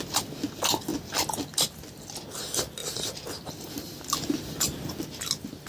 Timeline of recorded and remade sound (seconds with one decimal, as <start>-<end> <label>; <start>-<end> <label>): 0.0-2.8 recorded; 2.8-5.0 remade; 5.0-5.7 recorded